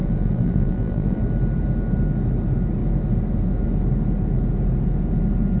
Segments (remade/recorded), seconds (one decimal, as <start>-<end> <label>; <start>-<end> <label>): 0.0-1.2 remade; 1.2-5.6 recorded